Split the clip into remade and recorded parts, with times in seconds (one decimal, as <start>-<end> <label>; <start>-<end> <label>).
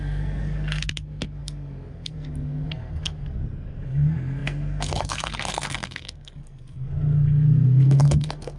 0.0-8.6 remade